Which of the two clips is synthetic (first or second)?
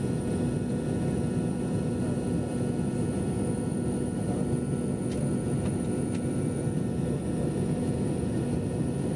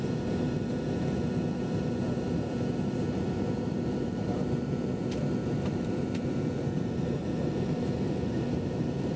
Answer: second